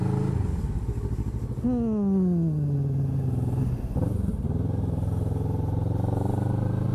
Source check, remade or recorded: recorded